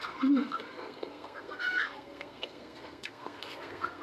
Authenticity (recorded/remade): remade